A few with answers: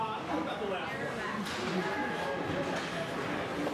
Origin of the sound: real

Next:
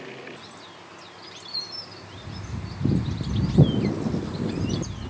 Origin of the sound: real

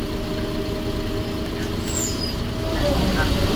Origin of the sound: real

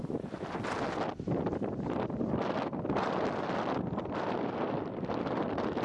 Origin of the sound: real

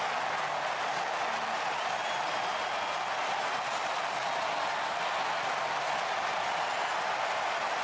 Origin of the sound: real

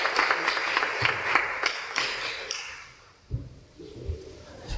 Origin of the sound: fake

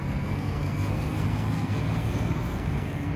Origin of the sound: fake